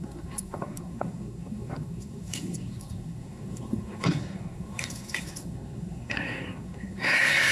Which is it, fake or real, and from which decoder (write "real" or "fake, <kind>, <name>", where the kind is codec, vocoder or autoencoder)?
fake, codec, SNAC